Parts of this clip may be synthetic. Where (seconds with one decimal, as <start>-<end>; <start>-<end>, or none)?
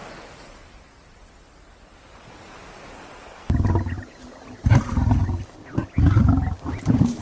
4.3-5.2; 6.7-7.2